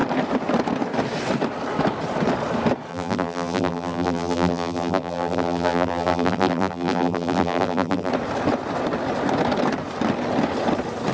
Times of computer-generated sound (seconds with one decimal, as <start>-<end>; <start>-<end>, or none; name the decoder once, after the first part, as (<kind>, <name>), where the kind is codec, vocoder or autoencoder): 2.9-8.1 (vocoder, BigVGAN v2)